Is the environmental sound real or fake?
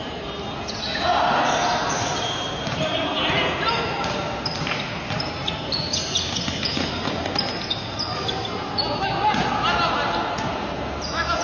real